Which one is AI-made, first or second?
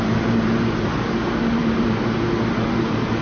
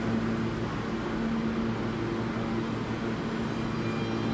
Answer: first